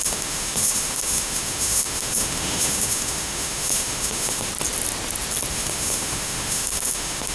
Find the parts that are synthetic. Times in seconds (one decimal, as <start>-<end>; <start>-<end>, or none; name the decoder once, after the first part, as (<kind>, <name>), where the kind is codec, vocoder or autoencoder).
0.0-4.5 (autoencoder, DAC-VAE); 5.5-7.3